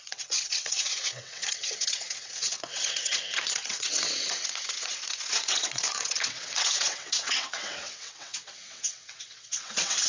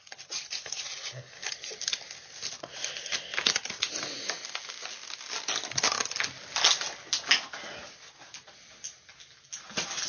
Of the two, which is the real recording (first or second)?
second